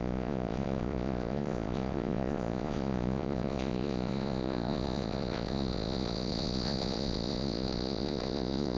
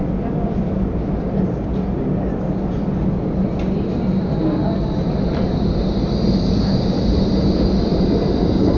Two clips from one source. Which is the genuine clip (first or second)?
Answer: second